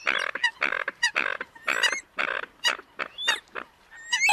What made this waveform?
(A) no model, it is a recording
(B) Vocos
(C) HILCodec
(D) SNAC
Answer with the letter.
A